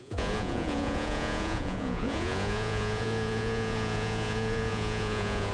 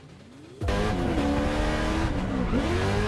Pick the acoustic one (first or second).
second